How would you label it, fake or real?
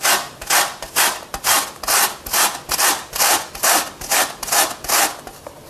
real